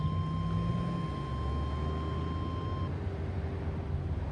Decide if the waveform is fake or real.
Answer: real